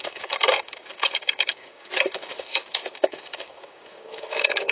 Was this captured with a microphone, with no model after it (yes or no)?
no